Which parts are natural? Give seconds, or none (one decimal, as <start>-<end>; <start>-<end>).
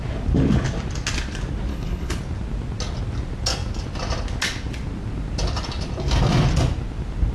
0.0-1.7; 2.2-7.3